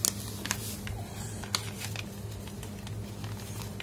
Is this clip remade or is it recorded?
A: recorded